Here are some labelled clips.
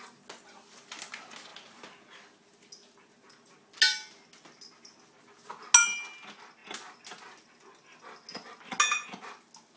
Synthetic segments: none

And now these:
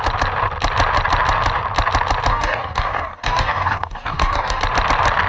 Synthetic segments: 2.3-4.6 (codec, DAC)

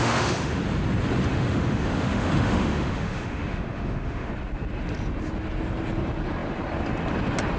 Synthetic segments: 0.0-0.6 (autoencoder, DAC-VAE); 1.3-4.3

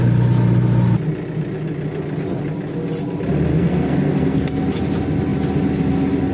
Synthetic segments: 3.5-4.6 (codec, SNAC)

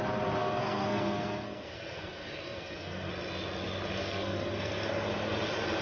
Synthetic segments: 0.4-3.1 (codec, SNAC); 4.0-4.9

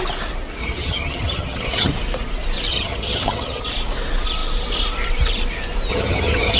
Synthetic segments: 0.6-1.9 (vocoder, HiFi-GAN); 2.7-3.6; 5.9-6.6

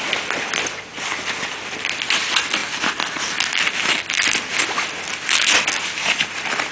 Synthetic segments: none

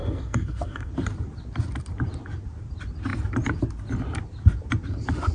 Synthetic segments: 0.0-0.9 (codec, SNAC)